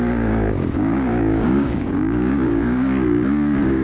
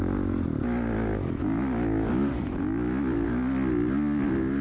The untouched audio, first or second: second